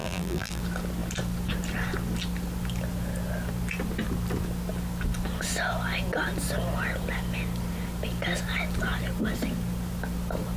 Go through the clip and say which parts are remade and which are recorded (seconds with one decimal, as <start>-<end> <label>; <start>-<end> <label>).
0.0-0.6 remade; 0.6-10.6 recorded